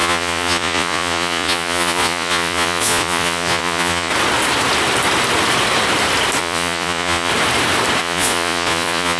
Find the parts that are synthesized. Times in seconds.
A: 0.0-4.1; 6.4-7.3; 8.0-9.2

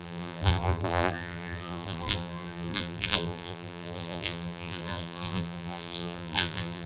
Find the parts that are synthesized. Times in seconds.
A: 0.0-6.9

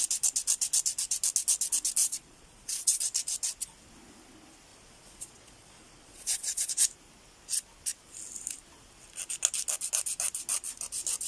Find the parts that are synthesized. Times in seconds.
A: 2.0-3.0; 4.7-6.7

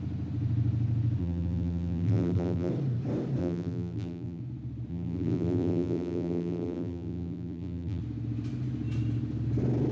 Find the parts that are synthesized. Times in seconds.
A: 1.2-2.7; 3.4-4.4; 4.9-8.0

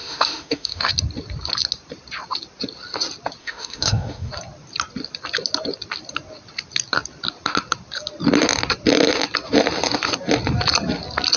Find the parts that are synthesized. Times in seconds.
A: 0.0-0.9; 3.4-4.3